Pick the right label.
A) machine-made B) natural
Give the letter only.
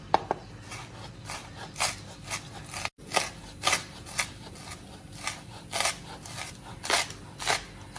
B